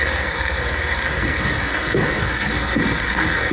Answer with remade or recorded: remade